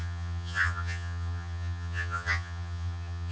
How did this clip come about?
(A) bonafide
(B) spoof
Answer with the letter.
B